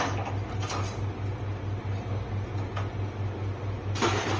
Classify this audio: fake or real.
real